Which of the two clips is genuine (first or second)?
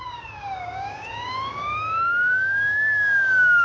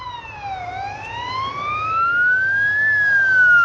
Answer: second